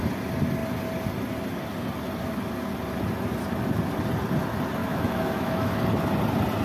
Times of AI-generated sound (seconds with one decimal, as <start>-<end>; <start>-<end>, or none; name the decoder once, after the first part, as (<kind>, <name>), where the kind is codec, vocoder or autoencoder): 4.8-5.8 (autoencoder, DAC-VAE)